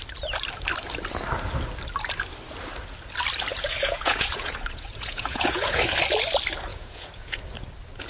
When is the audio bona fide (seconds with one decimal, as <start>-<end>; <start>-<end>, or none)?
0.0-3.5; 5.8-6.7; 7.4-8.1